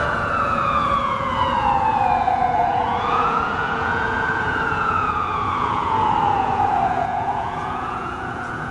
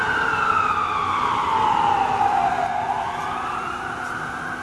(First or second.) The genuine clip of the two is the second